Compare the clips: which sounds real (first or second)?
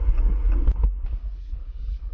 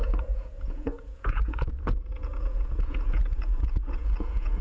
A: first